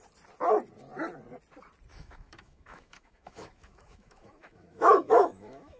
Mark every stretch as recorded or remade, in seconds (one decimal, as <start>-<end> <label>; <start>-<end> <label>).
0.0-1.9 recorded; 1.9-5.8 remade